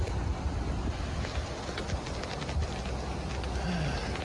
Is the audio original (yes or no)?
yes